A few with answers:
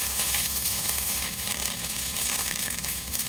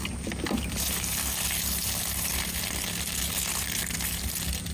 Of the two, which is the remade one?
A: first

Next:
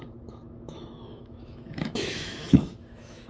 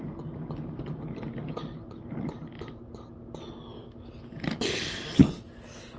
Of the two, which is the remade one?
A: first